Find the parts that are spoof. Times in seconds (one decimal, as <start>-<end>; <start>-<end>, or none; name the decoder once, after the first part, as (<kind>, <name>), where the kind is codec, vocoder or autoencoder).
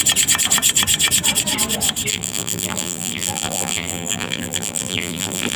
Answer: 2.1-5.6 (vocoder, BigVGAN v2)